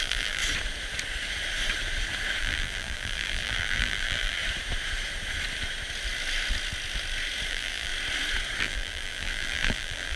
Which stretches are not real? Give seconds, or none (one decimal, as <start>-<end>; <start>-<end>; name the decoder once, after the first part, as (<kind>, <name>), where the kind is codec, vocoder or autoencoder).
0.0-0.4 (vocoder, BigVGAN v2); 2.4-4.4; 7.5-7.9; 8.6-10.2